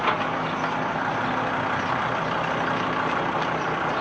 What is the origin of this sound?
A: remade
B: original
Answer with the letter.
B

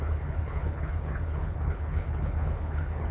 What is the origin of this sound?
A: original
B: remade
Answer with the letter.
B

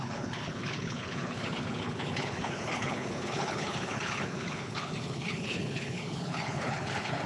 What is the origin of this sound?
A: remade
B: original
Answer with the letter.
A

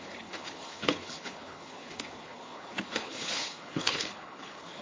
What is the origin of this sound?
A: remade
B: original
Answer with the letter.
A